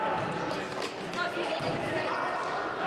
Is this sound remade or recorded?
recorded